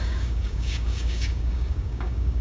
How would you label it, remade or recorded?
remade